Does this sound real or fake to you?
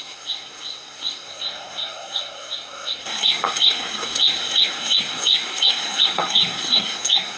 fake